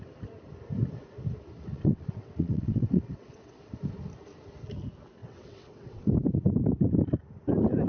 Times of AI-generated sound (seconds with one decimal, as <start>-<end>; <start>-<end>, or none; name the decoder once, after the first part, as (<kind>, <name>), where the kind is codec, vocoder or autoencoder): 1.7-3.7 (vocoder, WaveNeXt); 5.2-6.1